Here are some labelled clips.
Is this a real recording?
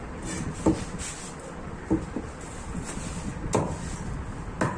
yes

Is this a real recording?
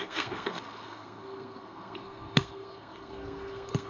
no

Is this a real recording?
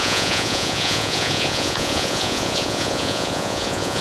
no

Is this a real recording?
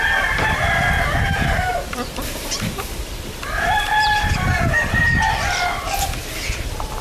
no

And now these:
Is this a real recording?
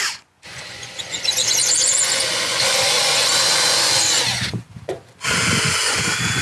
no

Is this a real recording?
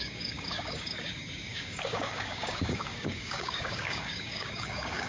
no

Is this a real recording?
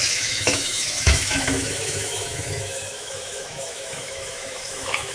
no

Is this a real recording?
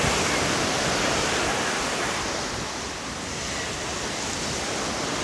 yes